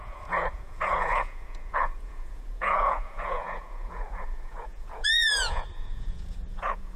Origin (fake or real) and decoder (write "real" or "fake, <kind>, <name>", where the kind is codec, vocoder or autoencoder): fake, vocoder, Vocos